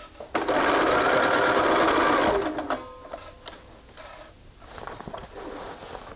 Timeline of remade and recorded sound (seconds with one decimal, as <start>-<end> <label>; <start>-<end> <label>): 0.0-6.2 recorded